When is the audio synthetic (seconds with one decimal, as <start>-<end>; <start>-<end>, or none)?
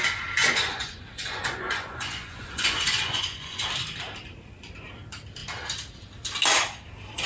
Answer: 0.4-3.6